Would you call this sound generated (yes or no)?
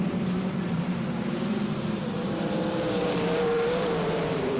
yes